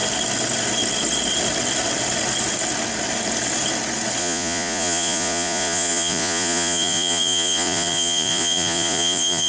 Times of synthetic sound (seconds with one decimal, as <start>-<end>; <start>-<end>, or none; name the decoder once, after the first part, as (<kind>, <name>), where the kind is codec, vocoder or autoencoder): 4.2-9.5 (vocoder, Vocos)